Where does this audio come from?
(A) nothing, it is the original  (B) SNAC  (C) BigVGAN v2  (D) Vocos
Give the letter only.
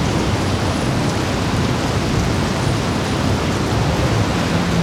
A